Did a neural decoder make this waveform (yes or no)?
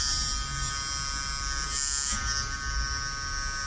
no